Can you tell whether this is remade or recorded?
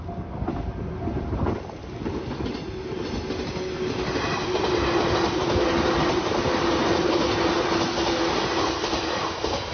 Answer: recorded